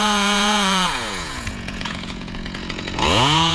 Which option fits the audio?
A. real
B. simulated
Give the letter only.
B